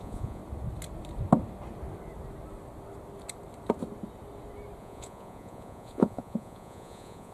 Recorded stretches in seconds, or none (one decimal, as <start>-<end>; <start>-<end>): 0.4-4.8